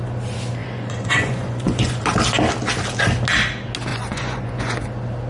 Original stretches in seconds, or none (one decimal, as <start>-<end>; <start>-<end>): 0.0-0.6; 2.0-3.9; 4.8-5.3